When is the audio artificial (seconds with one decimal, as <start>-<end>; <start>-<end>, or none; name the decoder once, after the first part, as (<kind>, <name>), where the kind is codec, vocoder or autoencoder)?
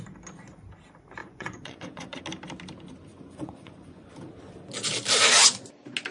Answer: 1.2-2.2 (vocoder, Vocos); 3.1-4.1